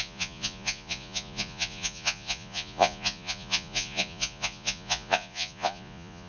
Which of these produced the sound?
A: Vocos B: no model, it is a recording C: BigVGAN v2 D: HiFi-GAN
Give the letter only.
A